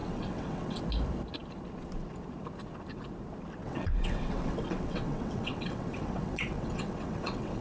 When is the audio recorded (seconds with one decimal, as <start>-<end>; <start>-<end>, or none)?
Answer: 0.8-3.6